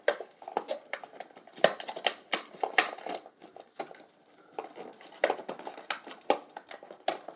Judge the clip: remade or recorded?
recorded